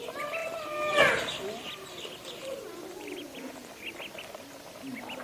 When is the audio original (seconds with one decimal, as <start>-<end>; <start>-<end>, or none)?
0.0-5.2